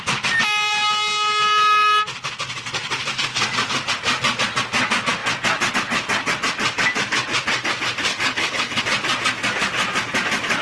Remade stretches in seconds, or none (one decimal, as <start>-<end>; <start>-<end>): 8.1-8.8